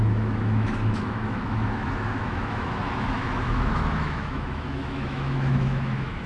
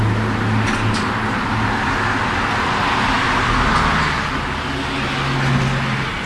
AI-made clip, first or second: first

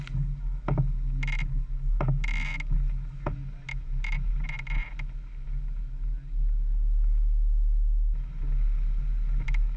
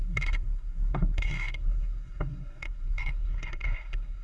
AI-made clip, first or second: second